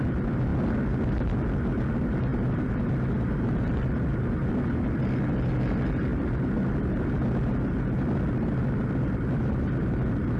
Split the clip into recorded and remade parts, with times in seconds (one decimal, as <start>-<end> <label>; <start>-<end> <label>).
0.0-10.4 recorded